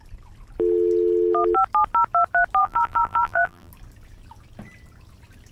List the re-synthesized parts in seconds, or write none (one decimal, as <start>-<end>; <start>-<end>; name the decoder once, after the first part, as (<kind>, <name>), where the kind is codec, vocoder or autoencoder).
2.6-3.7 (vocoder, BigVGAN v2)